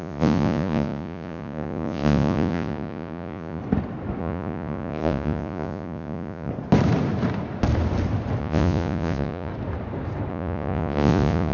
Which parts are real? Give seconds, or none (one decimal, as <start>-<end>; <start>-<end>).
3.6-4.2; 6.5-8.4; 9.5-10.3